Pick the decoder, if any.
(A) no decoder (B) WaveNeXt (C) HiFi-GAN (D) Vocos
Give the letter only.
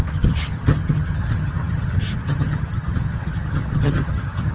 C